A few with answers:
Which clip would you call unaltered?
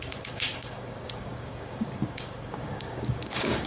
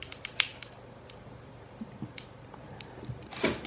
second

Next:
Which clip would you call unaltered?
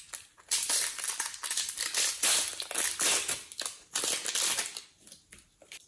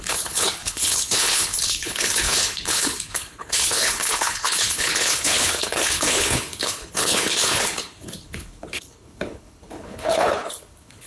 first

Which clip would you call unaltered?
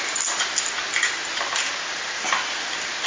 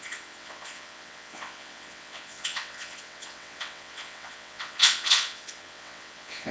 first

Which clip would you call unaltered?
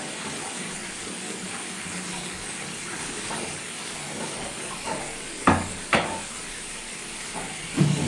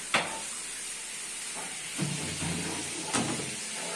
second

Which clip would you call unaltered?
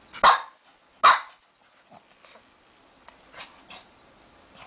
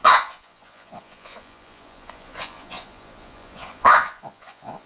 first